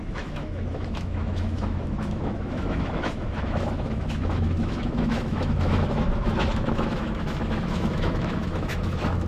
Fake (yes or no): yes